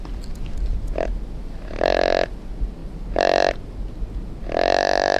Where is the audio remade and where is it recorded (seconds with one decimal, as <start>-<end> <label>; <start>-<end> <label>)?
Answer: 0.0-5.2 recorded